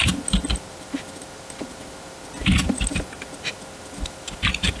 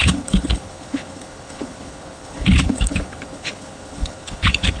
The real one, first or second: first